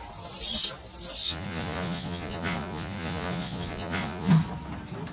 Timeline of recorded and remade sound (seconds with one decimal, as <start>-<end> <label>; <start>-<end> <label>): 0.0-1.2 recorded; 1.2-4.3 remade; 4.3-5.1 recorded